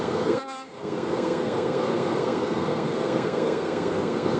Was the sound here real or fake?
fake